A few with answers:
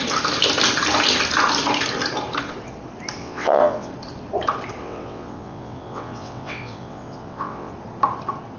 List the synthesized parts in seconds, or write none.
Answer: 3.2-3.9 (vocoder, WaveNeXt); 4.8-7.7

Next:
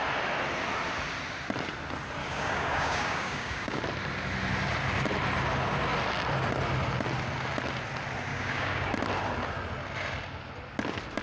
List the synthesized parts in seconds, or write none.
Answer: 2.2-3.8 (codec, DAC); 8.3-8.9

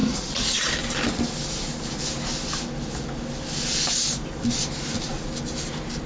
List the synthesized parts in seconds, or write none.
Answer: 0.0-0.6 (vocoder, Vocos)

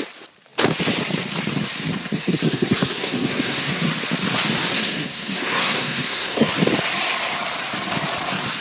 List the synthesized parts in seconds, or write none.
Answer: 2.1-3.9 (codec, SNAC); 4.7-6.5